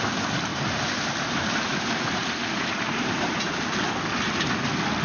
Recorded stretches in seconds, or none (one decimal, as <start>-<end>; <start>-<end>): 0.0-0.5; 3.5-5.0

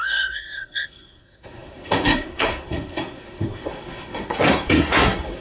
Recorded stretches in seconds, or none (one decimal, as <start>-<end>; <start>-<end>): none

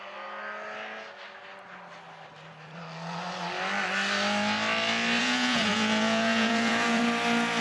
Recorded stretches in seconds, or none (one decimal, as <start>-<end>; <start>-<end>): 0.0-5.2; 7.0-7.6

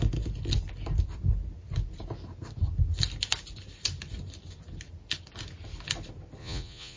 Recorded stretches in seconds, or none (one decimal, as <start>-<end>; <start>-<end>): 0.0-6.4